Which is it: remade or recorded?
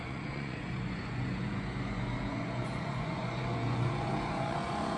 remade